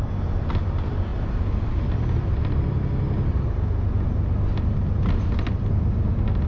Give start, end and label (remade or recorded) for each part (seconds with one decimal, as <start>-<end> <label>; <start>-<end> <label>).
0.0-1.1 recorded; 1.1-2.2 remade; 2.2-6.5 recorded